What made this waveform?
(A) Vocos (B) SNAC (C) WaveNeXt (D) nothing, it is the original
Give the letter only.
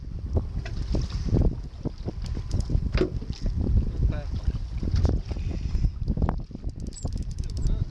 D